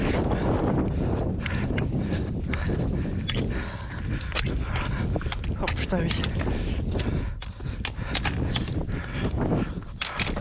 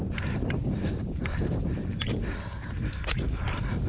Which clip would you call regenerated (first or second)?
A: second